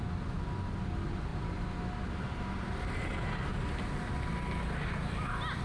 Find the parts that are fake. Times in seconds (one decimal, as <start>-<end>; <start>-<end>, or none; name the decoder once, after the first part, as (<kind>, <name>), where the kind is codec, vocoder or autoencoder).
none